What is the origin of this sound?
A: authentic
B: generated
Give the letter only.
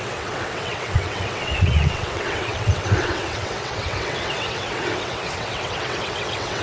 B